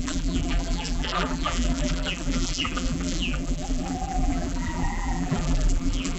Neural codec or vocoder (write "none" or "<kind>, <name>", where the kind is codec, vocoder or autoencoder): vocoder, BigVGAN v2